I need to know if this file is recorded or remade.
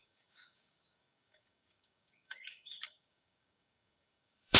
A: remade